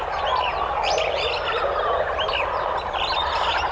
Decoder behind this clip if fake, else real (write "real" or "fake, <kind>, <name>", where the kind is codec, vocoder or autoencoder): real